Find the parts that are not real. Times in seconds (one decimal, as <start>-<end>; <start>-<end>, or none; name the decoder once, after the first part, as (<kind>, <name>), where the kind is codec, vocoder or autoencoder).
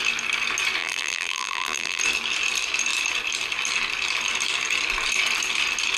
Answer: 0.8-2.0 (vocoder, BigVGAN v2)